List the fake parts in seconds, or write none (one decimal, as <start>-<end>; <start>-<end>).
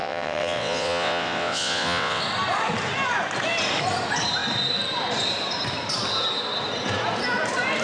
0.0-2.2